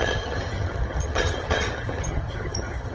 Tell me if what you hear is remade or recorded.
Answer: remade